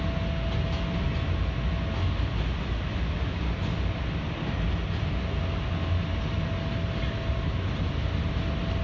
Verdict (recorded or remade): recorded